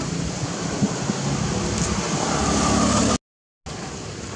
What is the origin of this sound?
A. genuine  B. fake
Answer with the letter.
A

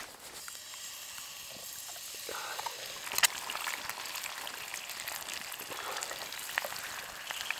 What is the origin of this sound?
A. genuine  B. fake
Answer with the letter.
A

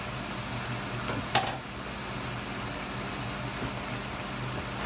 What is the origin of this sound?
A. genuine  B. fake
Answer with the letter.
A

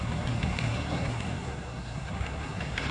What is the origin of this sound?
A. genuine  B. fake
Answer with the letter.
B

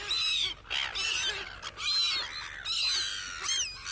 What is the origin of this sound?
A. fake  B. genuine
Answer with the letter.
B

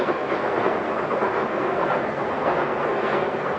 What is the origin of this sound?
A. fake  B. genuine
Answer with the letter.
A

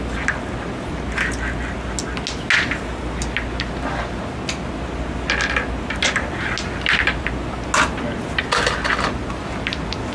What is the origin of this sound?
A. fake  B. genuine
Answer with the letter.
B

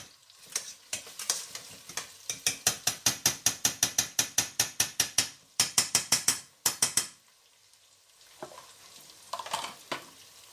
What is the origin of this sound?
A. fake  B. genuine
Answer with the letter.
B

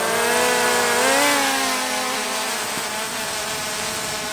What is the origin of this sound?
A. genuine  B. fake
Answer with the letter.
A